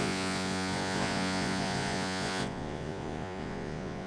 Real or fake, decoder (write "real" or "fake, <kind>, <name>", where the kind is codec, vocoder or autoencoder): fake, vocoder, Vocos